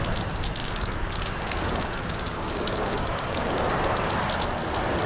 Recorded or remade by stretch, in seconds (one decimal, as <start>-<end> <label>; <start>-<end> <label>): 0.0-0.6 recorded; 0.6-3.7 remade; 3.7-5.1 recorded